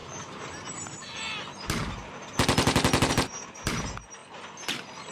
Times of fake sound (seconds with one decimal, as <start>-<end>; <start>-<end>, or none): 3.1-4.2